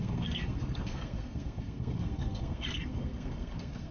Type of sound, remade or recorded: remade